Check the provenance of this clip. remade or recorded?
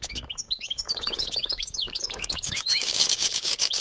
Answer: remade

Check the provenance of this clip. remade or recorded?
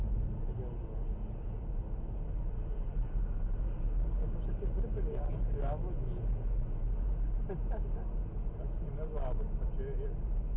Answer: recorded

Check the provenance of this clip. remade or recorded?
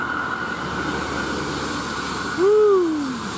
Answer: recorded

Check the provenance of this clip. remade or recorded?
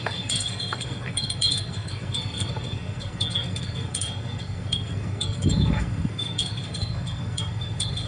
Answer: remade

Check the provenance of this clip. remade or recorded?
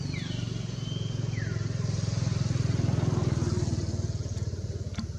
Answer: recorded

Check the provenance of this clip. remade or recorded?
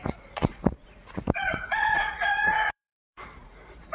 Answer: remade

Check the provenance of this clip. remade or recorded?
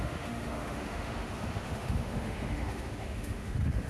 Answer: remade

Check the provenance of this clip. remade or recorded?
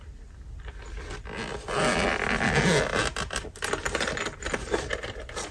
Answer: recorded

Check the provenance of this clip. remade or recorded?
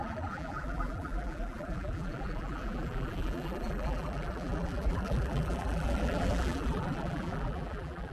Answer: remade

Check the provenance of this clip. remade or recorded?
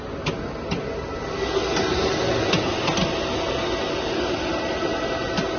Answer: recorded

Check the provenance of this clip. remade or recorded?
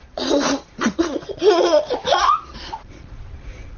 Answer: remade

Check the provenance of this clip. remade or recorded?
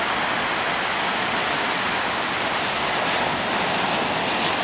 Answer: recorded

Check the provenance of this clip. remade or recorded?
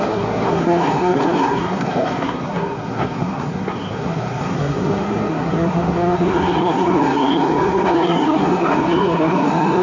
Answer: remade